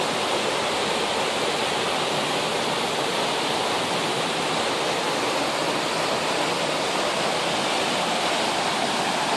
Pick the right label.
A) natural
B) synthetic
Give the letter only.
A